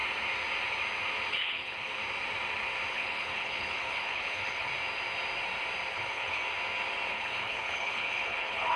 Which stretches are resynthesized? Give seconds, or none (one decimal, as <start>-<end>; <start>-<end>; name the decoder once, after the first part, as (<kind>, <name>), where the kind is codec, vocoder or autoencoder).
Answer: 1.3-2.0 (codec, HILCodec); 2.9-4.7; 5.9-6.4; 7.1-8.8